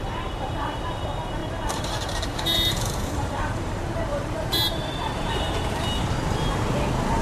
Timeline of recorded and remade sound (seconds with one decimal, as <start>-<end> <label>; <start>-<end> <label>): 0.0-1.4 recorded; 1.4-5.7 remade; 5.7-7.2 recorded